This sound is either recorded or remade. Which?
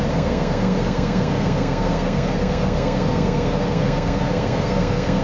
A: remade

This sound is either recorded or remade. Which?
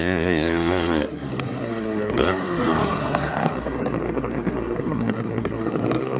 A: remade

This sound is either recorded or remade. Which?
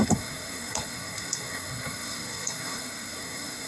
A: remade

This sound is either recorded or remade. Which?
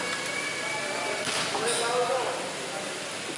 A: recorded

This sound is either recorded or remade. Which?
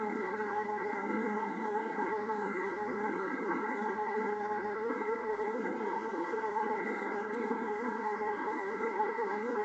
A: remade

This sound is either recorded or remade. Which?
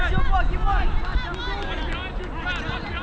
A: recorded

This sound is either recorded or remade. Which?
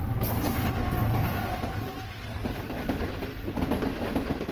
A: recorded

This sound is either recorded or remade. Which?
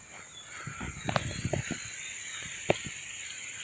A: recorded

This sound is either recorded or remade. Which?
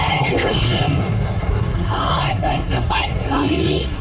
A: remade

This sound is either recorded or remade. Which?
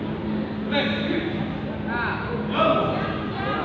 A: recorded